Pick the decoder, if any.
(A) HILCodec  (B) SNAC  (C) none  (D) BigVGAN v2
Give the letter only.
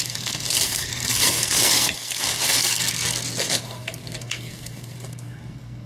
B